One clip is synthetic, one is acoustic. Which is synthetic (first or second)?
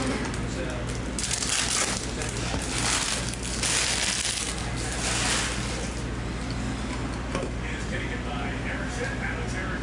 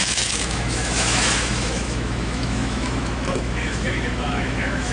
second